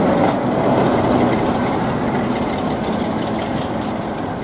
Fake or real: real